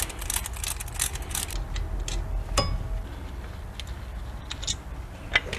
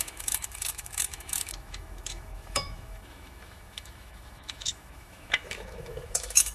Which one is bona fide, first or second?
first